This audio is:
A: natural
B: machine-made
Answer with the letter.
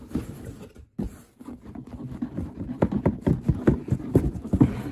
A